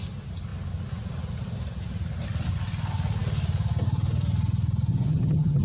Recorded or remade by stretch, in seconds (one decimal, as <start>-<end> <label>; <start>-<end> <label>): 0.0-4.9 recorded; 4.9-5.6 remade